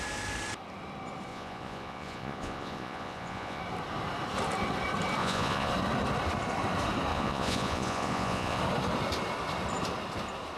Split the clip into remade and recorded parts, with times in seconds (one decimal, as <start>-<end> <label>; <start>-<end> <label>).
0.0-1.3 recorded; 1.3-3.6 remade; 3.6-5.2 recorded; 5.2-5.7 remade; 5.7-7.1 recorded; 7.1-8.6 remade; 8.6-10.6 recorded